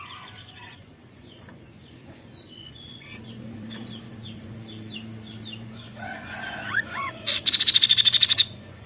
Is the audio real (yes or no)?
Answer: no